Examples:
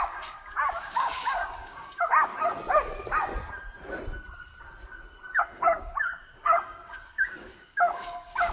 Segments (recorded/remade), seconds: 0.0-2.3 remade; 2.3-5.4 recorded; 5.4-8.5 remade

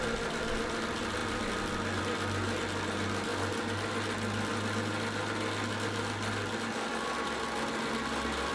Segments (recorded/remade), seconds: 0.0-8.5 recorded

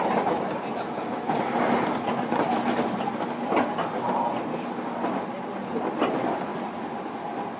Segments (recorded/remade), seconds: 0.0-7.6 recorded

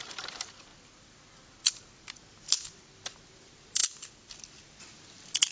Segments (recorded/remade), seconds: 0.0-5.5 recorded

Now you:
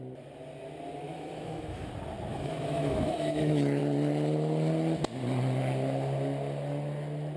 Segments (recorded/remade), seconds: 0.0-1.1 recorded; 1.1-1.9 remade; 1.9-2.3 recorded; 2.3-3.8 remade; 3.8-7.4 recorded